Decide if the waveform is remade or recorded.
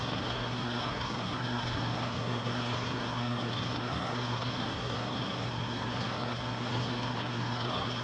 remade